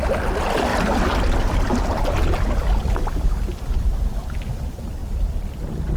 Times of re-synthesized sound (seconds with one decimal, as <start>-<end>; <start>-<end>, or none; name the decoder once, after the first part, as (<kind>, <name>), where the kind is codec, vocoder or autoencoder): none